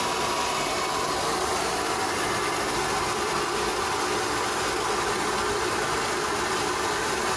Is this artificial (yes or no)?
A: no